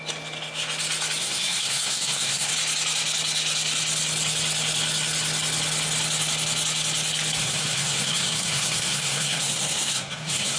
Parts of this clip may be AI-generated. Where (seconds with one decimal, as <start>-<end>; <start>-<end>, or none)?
1.2-2.5; 7.4-10.6

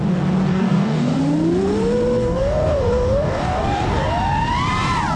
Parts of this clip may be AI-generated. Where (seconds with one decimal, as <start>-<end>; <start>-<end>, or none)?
0.5-1.2; 2.2-4.1

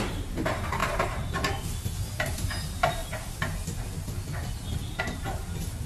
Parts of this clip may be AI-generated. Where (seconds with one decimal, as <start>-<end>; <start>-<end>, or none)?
0.0-3.0; 5.0-5.9

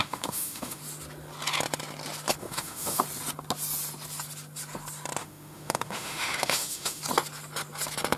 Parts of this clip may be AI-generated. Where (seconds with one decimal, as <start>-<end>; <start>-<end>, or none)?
0.0-0.8; 2.4-3.0; 5.2-7.0